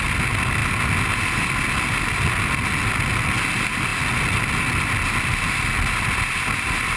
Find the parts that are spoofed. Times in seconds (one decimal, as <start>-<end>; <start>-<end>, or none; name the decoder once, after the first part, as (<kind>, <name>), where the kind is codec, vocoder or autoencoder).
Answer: none